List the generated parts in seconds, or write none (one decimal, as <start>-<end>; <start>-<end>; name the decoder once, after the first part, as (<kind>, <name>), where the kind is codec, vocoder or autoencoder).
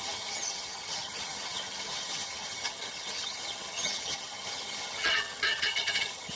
0.0-6.4 (vocoder, HiFi-GAN)